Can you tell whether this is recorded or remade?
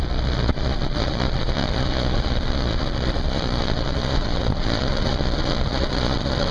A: remade